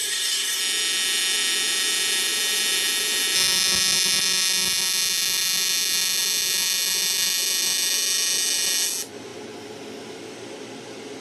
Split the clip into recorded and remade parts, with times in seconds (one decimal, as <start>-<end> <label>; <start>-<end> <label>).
0.0-0.6 remade; 0.6-11.2 recorded